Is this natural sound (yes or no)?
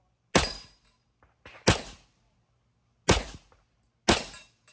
yes